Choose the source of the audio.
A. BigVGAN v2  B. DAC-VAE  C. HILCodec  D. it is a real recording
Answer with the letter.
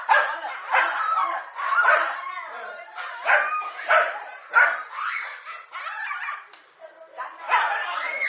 A